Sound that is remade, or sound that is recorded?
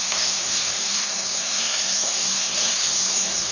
remade